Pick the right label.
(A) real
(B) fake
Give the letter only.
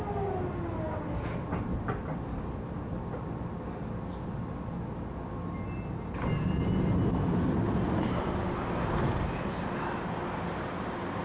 A